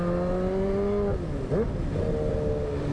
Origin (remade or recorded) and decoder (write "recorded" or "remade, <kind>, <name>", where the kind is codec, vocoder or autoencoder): recorded